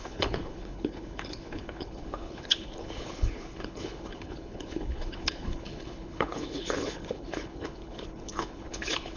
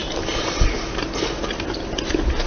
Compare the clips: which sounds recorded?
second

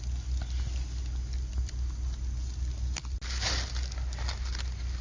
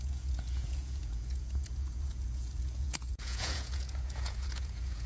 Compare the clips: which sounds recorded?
first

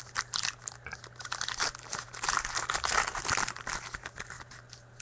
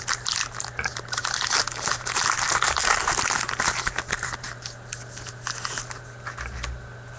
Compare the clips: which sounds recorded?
second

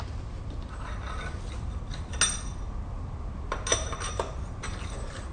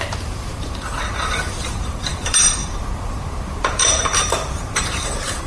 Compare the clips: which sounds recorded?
first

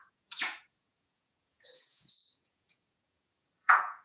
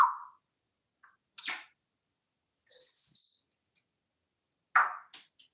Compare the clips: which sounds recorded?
second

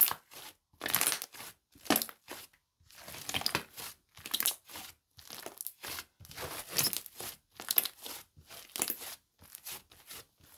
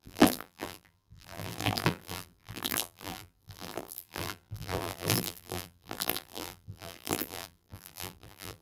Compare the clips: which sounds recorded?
first